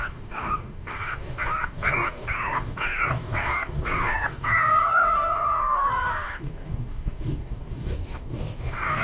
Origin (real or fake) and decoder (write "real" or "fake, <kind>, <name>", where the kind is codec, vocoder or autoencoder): fake, codec, DAC